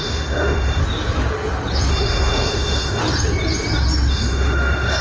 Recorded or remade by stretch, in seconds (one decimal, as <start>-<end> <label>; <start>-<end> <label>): 0.0-0.8 remade; 0.8-1.9 recorded; 1.9-3.0 remade; 3.0-4.1 recorded; 4.1-5.0 remade